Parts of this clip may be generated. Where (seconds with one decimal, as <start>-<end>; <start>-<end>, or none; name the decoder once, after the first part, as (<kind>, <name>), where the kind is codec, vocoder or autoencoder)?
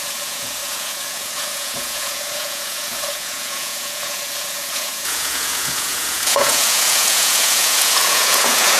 0.0-8.8 (vocoder, Vocos)